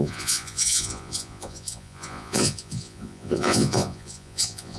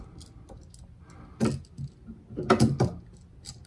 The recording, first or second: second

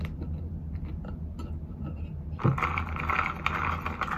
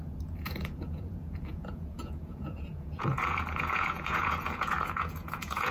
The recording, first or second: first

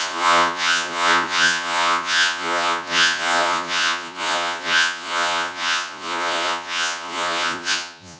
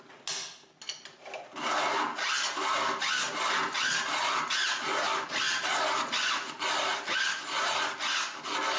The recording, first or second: second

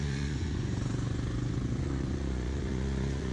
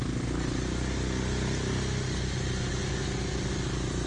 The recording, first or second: second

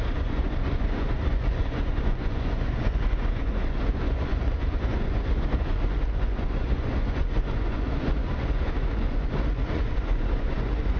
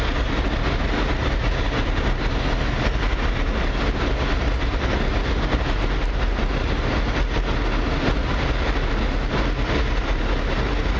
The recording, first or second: second